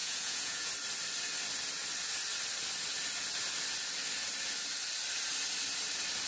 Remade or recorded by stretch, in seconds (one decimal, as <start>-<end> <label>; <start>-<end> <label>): 0.0-0.7 remade; 0.7-6.3 recorded